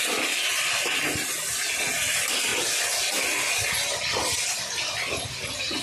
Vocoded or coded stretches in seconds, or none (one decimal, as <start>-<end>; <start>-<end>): none